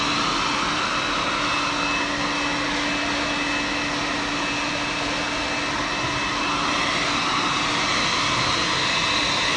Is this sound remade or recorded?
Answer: recorded